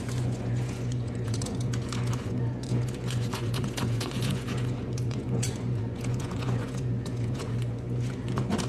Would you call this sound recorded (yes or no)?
no